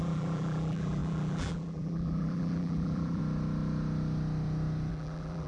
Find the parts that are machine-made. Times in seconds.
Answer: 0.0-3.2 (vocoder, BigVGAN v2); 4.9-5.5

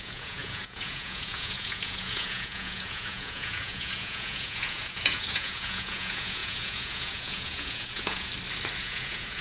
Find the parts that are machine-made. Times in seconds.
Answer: 0.0-8.3 (vocoder, Vocos); 8.8-9.4

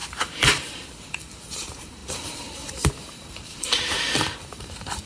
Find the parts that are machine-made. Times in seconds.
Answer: 0.0-5.1 (vocoder, BigVGAN v2)

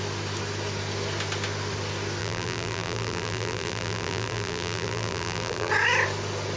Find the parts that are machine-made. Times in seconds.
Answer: 2.2-5.7 (vocoder, BigVGAN v2)

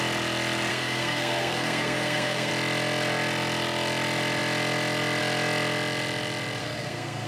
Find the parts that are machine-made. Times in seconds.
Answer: 0.7-2.5 (codec, SNAC); 6.6-7.3

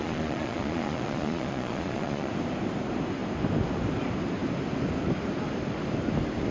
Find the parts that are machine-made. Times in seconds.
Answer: 0.0-2.3 (vocoder, Vocos)

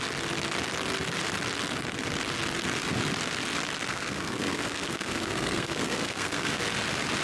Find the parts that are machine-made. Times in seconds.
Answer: 3.9-6.6 (codec, SNAC)

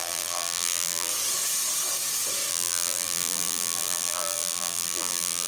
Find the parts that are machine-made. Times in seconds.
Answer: 0.0-1.1 (vocoder, BigVGAN v2); 2.5-5.5